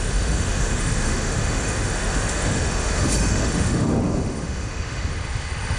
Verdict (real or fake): fake